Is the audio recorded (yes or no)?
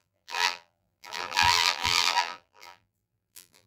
no